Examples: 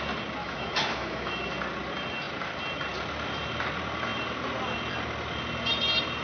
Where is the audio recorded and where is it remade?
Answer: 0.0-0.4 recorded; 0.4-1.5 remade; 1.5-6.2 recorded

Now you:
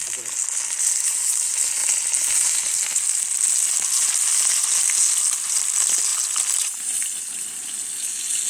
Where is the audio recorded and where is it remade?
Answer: 0.0-8.5 recorded

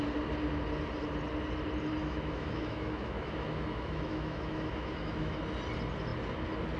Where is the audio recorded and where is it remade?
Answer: 0.0-2.0 recorded; 2.0-5.4 remade; 5.4-6.8 recorded